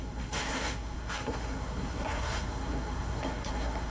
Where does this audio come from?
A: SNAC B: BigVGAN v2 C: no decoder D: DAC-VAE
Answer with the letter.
A